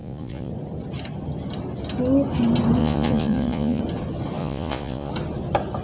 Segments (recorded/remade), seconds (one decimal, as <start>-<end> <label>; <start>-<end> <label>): 0.0-0.5 remade; 0.5-2.8 recorded; 2.8-3.8 remade; 3.8-4.4 recorded; 4.4-5.1 remade; 5.1-5.8 recorded